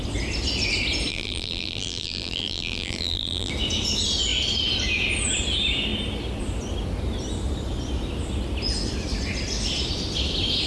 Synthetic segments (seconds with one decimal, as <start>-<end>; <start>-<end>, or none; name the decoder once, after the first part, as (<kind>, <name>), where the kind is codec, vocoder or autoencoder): 1.1-3.5 (vocoder, BigVGAN v2)